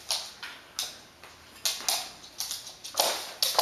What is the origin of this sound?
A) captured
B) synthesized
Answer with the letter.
A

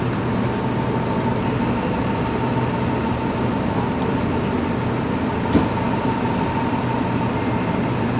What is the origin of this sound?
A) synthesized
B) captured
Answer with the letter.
B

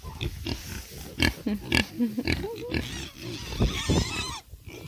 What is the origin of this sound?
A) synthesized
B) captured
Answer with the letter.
B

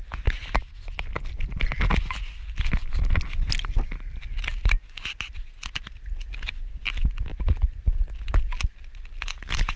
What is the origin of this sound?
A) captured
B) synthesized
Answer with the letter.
A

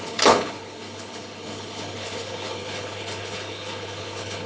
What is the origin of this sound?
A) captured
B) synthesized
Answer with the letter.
B